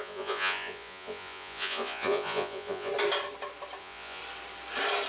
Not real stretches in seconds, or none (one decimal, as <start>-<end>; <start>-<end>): 0.0-2.9; 3.8-4.2